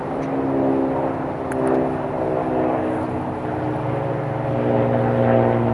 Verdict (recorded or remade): recorded